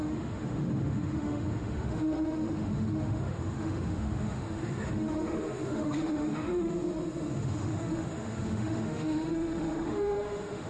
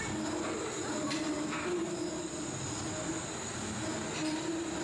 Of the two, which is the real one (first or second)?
second